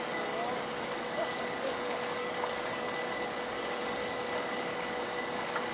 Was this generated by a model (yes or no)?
yes